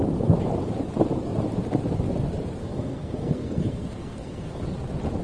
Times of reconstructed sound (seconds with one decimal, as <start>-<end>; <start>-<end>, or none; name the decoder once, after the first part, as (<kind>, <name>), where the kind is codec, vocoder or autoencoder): 2.6-4.6 (codec, SNAC)